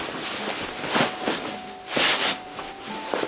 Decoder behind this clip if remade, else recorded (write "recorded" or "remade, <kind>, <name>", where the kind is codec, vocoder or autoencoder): recorded